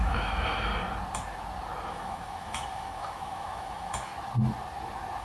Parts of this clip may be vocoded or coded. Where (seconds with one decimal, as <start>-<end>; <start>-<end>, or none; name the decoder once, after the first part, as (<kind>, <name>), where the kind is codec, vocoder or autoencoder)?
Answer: 0.0-0.7 (autoencoder, DAC-VAE); 1.9-4.1